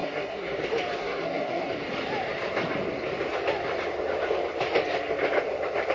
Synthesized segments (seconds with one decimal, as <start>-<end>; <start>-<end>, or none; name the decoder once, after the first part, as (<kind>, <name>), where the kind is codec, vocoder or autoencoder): 0.0-0.6 (codec, SNAC); 1.0-1.7